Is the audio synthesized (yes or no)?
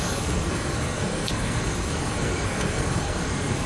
yes